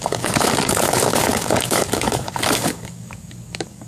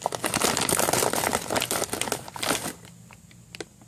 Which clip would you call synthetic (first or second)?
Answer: first